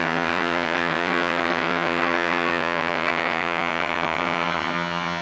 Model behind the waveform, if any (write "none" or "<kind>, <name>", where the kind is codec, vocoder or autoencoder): vocoder, HiFi-GAN